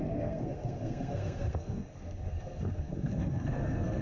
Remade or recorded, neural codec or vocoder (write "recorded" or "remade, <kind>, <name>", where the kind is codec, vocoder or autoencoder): remade, codec, SNAC